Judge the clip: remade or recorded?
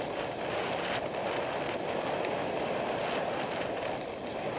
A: recorded